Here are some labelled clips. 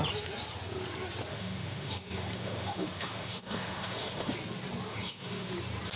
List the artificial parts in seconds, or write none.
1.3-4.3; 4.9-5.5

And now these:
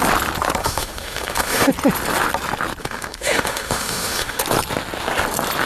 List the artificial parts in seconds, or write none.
0.6-1.7; 2.8-4.4

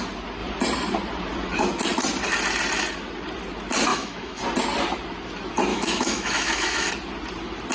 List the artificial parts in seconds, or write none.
3.9-4.4; 5.7-6.9

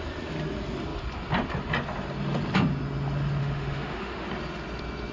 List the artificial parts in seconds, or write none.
3.4-4.3

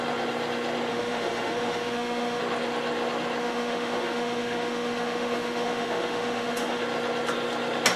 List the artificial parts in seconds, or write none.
0.9-2.4; 3.4-6.8